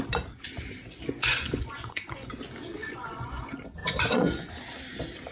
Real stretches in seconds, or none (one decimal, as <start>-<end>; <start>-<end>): 0.0-1.3; 2.3-2.8; 3.4-3.8; 4.5-5.3